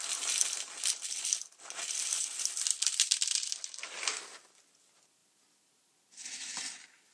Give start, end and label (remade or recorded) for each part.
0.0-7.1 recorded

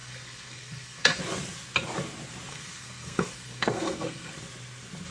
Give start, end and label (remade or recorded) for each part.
0.0-1.2 remade; 1.2-2.5 recorded; 2.5-4.3 remade; 4.3-5.1 recorded

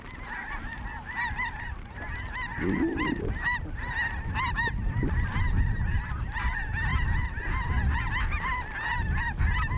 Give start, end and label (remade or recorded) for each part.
0.0-9.8 recorded